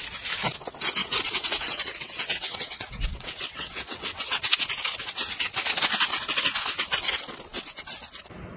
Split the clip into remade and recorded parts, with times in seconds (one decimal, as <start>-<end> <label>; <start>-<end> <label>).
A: 0.0-1.0 recorded; 1.0-4.5 remade; 4.5-8.6 recorded